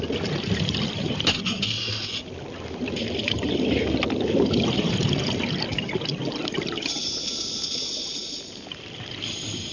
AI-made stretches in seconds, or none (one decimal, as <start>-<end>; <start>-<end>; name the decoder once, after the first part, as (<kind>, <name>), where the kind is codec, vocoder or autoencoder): none